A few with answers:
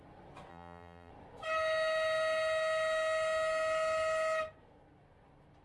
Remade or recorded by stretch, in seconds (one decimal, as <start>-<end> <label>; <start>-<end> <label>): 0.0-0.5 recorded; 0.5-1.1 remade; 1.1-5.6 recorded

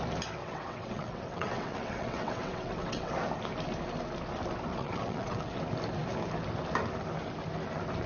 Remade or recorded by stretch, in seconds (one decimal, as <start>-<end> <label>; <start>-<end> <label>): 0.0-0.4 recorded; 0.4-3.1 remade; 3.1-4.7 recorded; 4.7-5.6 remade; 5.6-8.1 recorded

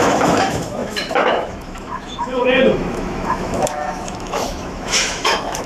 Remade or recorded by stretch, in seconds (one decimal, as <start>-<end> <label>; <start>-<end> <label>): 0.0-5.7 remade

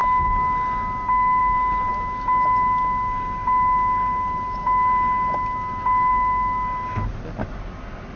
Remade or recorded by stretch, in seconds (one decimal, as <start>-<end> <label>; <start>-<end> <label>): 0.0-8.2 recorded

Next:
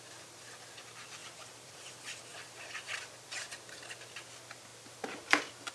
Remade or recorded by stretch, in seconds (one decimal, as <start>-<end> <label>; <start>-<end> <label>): 0.0-1.2 recorded; 1.2-1.9 remade; 1.9-2.3 recorded; 2.3-3.8 remade; 3.8-4.7 recorded; 4.7-5.7 remade